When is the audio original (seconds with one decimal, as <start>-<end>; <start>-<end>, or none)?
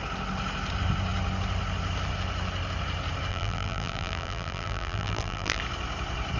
0.0-3.3; 5.6-6.4